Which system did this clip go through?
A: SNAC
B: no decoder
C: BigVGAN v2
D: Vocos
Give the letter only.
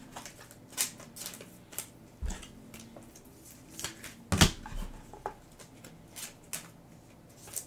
B